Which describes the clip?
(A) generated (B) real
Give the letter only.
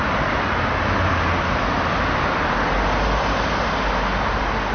B